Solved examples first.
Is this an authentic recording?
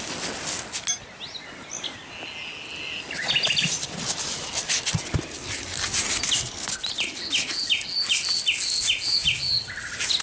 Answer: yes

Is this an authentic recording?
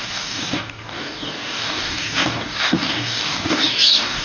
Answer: no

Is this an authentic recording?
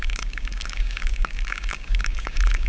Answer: no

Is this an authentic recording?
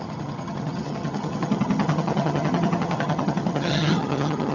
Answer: no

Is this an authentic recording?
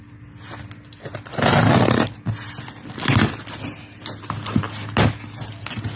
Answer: yes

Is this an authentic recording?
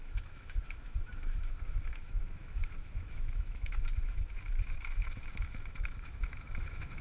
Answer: no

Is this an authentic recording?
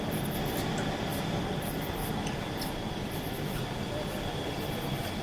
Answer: yes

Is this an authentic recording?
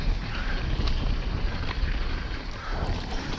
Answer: no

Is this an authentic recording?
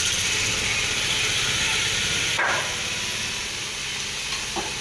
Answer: yes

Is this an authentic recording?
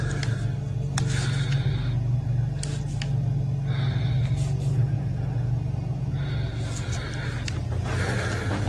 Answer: yes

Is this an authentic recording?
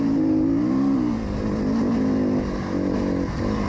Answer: yes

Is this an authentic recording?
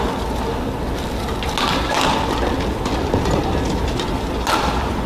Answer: yes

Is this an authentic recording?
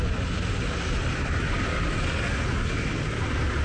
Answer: yes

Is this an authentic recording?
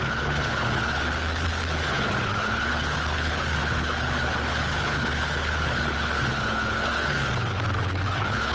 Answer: no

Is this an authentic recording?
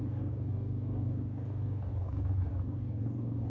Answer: no